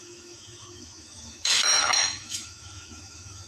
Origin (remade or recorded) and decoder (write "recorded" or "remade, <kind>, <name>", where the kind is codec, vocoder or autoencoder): remade, autoencoder, DAC-VAE